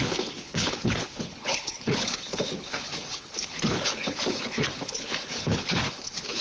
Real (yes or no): no